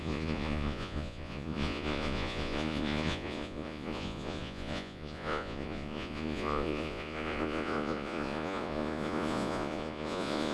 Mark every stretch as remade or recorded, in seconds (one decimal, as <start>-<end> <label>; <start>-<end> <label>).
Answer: 0.0-10.5 remade